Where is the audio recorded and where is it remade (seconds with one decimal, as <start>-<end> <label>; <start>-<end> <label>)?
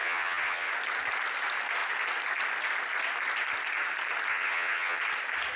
0.0-0.7 remade; 0.7-4.3 recorded; 4.3-5.0 remade; 5.0-5.6 recorded